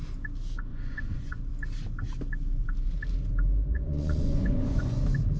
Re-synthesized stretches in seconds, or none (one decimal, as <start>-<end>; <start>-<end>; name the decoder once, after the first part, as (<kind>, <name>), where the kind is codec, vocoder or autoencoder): 0.7-1.4 (vocoder, Vocos); 3.7-5.0